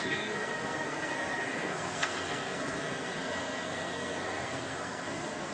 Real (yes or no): no